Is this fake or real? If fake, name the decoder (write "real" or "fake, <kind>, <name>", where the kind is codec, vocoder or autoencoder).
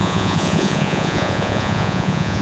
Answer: fake, vocoder, Vocos